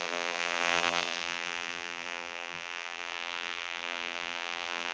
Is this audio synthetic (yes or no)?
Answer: yes